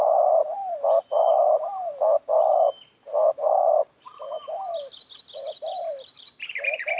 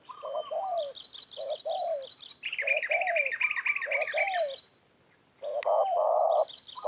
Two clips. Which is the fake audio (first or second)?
first